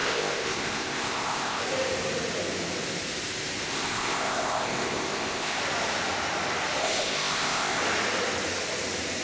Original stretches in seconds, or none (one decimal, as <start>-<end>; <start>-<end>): 1.6-3.7; 5.6-6.8; 7.8-9.2